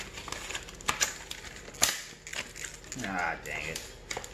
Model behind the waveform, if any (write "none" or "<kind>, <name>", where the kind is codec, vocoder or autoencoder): none